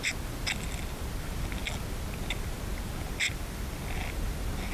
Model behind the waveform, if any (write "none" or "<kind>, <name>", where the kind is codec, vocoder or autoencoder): none